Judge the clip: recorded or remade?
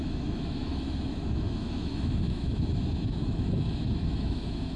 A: remade